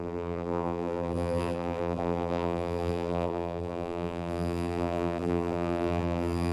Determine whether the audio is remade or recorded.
remade